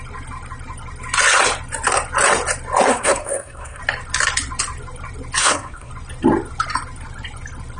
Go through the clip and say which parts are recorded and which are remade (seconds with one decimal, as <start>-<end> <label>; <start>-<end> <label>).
0.0-2.9 recorded; 2.9-3.8 remade; 3.8-5.4 recorded; 5.4-5.9 remade; 5.9-7.8 recorded